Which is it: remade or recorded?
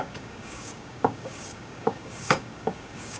remade